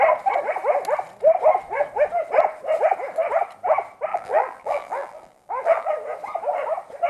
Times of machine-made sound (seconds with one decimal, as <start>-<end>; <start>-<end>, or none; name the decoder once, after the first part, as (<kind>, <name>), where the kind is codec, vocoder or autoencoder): 4.1-5.9 (vocoder, BigVGAN v2)